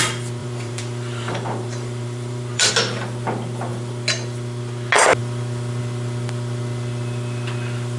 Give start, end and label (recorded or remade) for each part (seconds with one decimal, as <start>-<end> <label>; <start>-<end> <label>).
0.0-0.4 recorded; 0.4-2.7 remade; 2.7-8.0 recorded